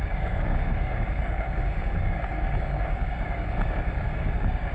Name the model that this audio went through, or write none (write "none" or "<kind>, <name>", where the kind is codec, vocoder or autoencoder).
codec, DAC